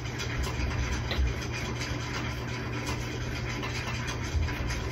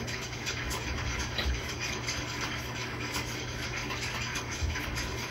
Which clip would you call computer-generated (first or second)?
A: second